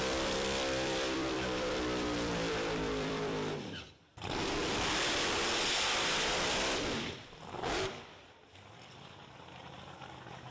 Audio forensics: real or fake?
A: fake